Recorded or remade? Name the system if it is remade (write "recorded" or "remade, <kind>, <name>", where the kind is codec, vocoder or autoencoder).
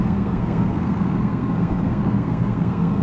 remade, codec, SNAC